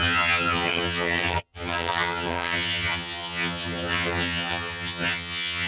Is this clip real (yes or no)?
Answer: no